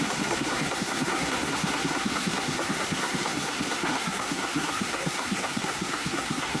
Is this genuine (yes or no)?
no